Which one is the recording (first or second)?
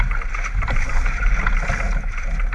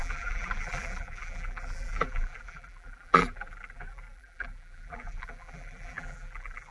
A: first